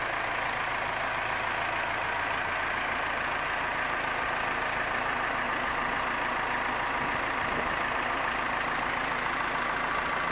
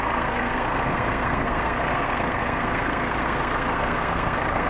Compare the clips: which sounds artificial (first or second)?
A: second